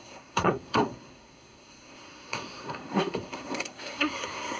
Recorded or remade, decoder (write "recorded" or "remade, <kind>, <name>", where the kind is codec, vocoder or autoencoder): remade, codec, SNAC